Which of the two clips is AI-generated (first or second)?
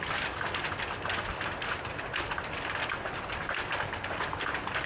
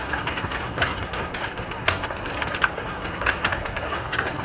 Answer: second